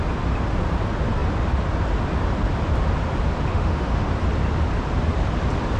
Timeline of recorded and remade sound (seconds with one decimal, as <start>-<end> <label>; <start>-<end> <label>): 0.0-3.5 recorded; 3.5-4.1 remade; 4.1-5.8 recorded